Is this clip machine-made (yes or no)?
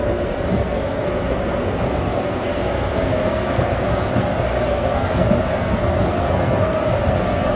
yes